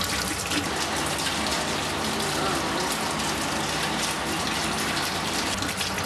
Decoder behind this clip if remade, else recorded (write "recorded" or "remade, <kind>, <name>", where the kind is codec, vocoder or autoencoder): recorded